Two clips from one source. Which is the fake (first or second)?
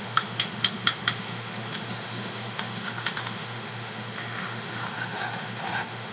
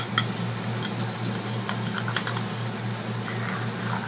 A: first